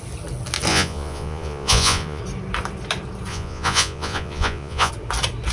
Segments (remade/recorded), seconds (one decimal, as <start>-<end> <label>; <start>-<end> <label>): 0.0-0.7 recorded; 0.7-2.2 remade; 2.2-3.3 recorded; 3.3-4.9 remade; 4.9-5.5 recorded